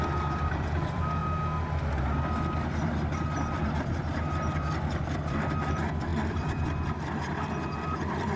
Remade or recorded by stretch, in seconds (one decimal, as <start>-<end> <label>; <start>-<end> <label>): 0.0-1.2 remade; 1.2-2.7 recorded; 2.7-8.4 remade